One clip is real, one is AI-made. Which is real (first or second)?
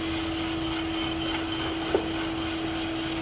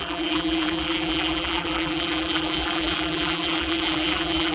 first